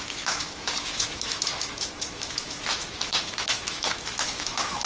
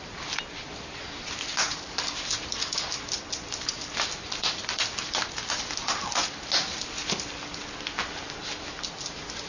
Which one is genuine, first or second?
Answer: second